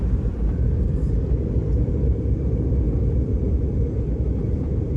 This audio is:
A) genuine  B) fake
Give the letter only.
B